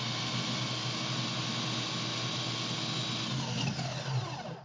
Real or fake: real